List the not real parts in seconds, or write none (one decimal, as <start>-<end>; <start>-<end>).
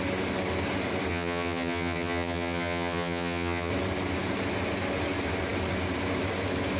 1.1-3.7